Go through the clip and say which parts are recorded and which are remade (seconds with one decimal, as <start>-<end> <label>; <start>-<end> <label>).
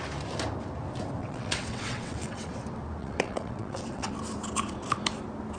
0.0-1.2 recorded; 1.2-2.5 remade; 2.5-3.0 recorded; 3.0-4.1 remade; 4.1-5.6 recorded